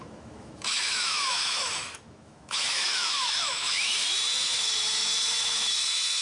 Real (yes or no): no